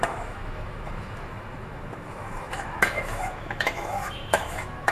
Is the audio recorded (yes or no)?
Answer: no